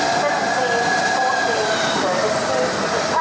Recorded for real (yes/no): yes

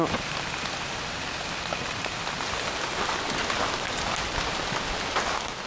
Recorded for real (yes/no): yes